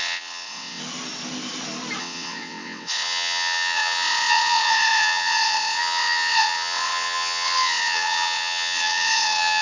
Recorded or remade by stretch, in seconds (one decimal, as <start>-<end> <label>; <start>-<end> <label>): 0.0-0.8 remade; 0.8-2.0 recorded; 2.0-9.6 remade